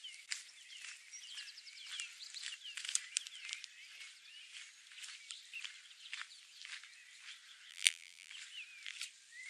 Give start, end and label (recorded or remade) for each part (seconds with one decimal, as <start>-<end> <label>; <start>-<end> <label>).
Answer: 0.0-7.7 recorded; 7.7-8.3 remade; 8.3-9.5 recorded